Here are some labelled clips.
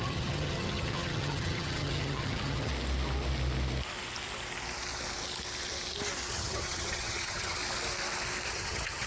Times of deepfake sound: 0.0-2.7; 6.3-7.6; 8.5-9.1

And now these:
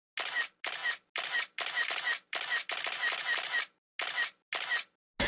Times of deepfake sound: none